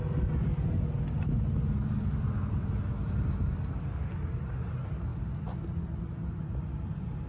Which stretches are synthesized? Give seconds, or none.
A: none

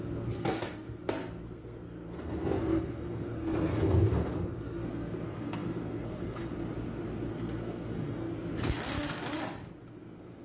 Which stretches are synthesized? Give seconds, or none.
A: 0.0-6.5 (codec, SNAC); 7.3-8.5; 9.8-10.4

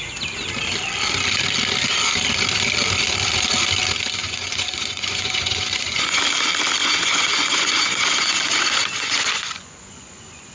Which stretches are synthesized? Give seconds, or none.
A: 4.2-6.2 (vocoder, Vocos); 6.8-10.5